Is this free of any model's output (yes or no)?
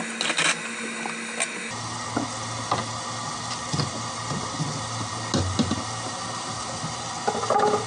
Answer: yes